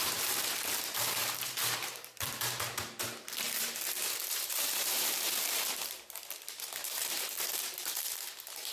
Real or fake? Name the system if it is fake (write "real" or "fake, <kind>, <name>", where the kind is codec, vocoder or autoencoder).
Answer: fake, vocoder, BigVGAN v2